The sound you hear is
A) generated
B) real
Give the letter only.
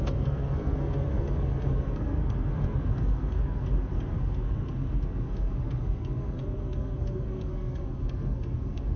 A